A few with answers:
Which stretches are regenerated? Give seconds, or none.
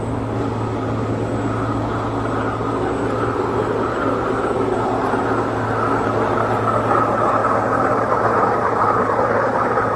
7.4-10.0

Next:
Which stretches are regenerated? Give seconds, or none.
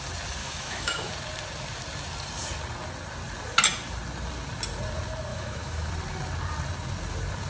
0.4-1.1; 5.3-5.9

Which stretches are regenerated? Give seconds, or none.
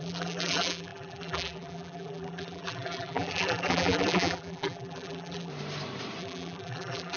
0.0-5.5; 6.2-7.2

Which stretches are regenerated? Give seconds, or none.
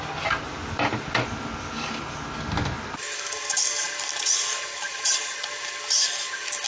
4.9-5.4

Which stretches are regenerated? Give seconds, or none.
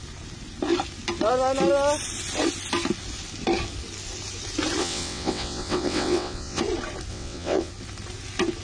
4.8-6.6; 7.1-7.7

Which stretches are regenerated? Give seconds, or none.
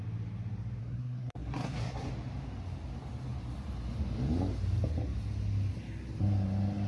0.8-2.1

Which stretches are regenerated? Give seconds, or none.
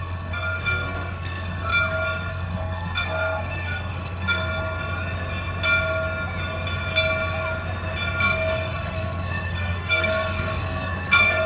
0.0-1.7; 2.3-4.5; 8.2-11.5